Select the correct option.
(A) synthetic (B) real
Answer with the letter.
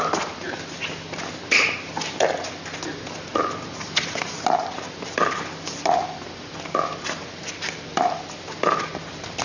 B